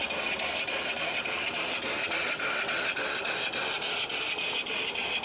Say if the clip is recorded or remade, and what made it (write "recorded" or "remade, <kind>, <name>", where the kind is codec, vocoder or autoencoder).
recorded